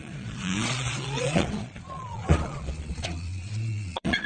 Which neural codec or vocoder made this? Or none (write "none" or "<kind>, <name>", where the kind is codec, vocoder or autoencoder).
vocoder, Vocos